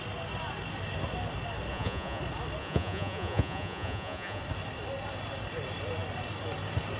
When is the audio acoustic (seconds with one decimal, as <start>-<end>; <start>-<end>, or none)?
0.0-1.7; 2.2-2.6; 4.4-7.0